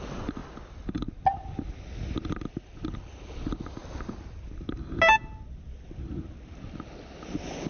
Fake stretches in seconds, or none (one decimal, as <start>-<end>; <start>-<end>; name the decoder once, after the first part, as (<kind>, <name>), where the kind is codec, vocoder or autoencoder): 0.4-1.7 (vocoder, BigVGAN v2)